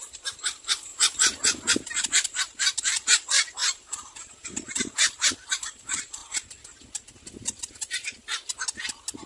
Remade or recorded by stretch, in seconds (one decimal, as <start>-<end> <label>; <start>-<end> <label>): 0.0-0.9 remade; 0.9-1.7 recorded; 1.7-6.2 remade; 6.2-7.6 recorded; 7.6-8.2 remade; 8.2-9.3 recorded